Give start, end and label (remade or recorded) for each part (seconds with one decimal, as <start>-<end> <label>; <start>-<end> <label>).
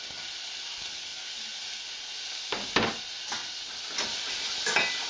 0.0-5.1 recorded